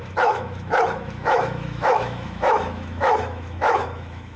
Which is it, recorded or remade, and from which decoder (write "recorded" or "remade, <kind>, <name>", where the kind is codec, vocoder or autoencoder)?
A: remade, autoencoder, DAC-VAE